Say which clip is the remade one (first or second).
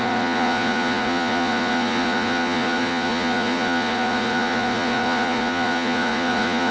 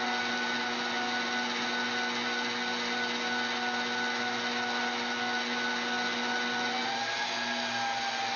first